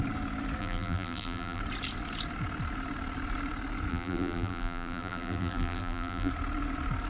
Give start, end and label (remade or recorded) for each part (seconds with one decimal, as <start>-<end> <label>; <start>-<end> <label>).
0.0-0.6 recorded; 0.6-1.6 remade; 1.6-3.9 recorded; 3.9-6.3 remade; 6.3-7.1 recorded